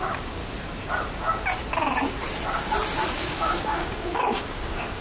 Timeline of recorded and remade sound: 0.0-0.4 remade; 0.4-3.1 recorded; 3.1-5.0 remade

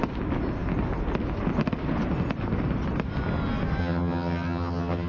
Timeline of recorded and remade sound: 0.0-3.8 recorded; 3.8-5.1 remade

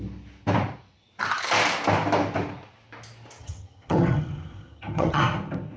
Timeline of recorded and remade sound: 0.0-3.4 recorded; 3.4-5.2 remade; 5.2-5.8 recorded

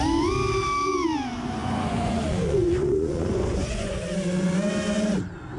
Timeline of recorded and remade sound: 0.0-1.6 recorded; 1.6-4.0 remade; 4.0-5.6 recorded

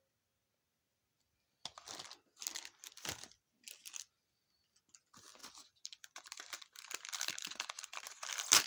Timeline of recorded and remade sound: 0.0-8.7 recorded

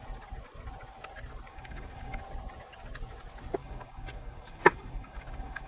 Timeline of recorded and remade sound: 0.0-1.5 recorded; 1.5-2.2 remade; 2.2-3.6 recorded; 3.6-5.7 remade

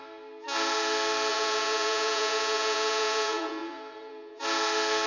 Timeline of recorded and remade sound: 0.0-1.3 recorded; 1.3-4.4 remade; 4.4-5.1 recorded

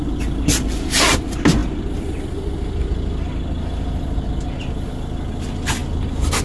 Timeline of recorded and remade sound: 0.0-6.4 recorded